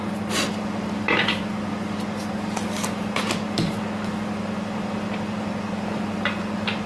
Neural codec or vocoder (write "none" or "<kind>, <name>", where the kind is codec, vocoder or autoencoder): none